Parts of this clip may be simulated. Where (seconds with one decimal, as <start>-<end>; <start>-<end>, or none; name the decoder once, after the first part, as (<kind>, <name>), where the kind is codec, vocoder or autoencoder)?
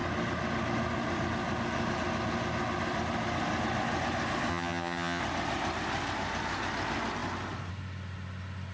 4.5-5.2 (vocoder, HiFi-GAN)